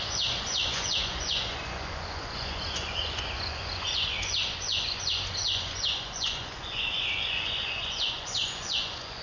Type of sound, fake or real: fake